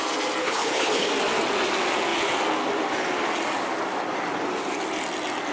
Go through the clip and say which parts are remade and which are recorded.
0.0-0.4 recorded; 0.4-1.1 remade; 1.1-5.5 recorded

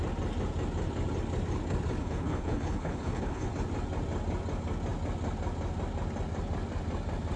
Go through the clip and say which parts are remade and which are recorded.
0.0-2.0 recorded; 2.0-3.5 remade; 3.5-7.4 recorded

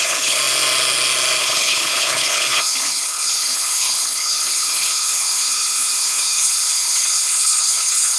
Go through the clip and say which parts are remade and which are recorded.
0.0-0.4 remade; 0.4-1.4 recorded; 1.4-8.2 remade

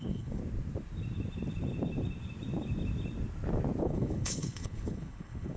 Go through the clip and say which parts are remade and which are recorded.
0.0-0.4 remade; 0.4-3.8 recorded; 3.8-5.6 remade

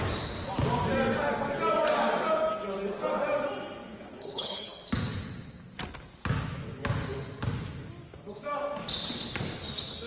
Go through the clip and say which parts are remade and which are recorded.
0.0-4.1 recorded; 4.1-4.7 remade; 4.7-10.1 recorded

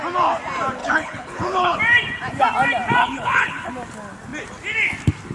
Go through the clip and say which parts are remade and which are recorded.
0.0-0.8 recorded; 0.8-1.8 remade; 1.8-3.0 recorded; 3.0-3.7 remade; 3.7-5.3 recorded